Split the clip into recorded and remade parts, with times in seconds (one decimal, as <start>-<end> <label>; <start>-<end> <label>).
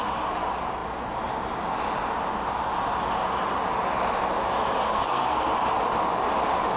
0.0-4.8 recorded; 4.8-5.5 remade; 5.5-6.8 recorded